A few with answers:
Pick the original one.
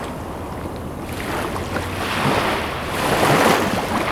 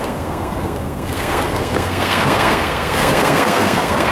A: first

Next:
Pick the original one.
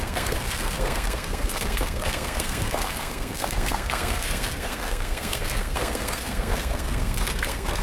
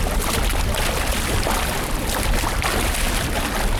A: second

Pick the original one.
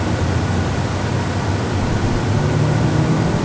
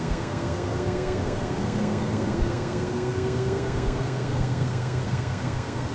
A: first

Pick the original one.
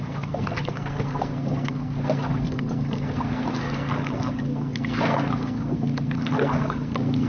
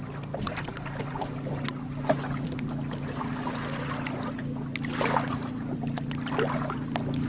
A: second